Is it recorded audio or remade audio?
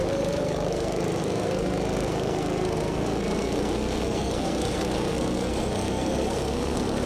remade